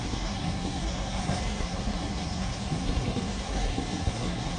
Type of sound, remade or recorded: remade